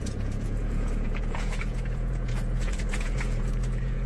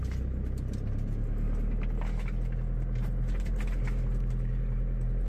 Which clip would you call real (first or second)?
second